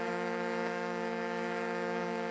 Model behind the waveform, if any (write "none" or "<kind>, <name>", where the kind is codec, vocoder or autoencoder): codec, DAC